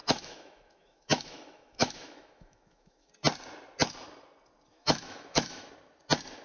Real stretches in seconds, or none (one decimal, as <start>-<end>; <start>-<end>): 3.1-4.7; 5.7-6.4